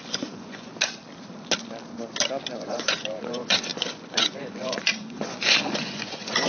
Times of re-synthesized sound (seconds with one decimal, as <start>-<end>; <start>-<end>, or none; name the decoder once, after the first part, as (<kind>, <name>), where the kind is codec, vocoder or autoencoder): 0.0-0.7 (vocoder, Vocos); 2.6-6.5